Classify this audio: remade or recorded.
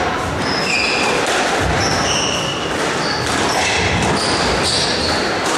recorded